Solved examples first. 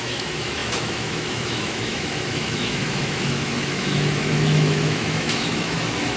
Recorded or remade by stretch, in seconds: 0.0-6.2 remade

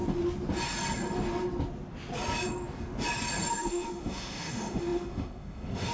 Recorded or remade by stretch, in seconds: 0.0-3.5 recorded; 3.5-5.9 remade

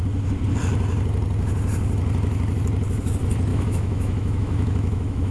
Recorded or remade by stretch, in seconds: 0.0-3.5 recorded; 3.5-5.3 remade

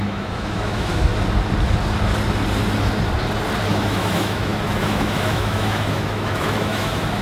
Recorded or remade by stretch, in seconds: 0.0-1.1 remade; 1.1-3.7 recorded; 3.7-7.2 remade

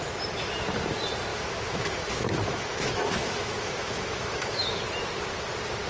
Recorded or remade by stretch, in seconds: 0.0-1.3 recorded; 1.3-4.8 remade; 4.8-5.9 recorded

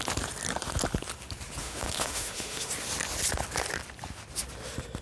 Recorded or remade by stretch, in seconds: 0.0-1.6 recorded; 1.6-2.7 remade; 2.7-5.0 recorded

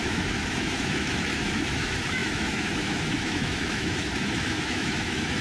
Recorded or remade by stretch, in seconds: 0.0-5.4 remade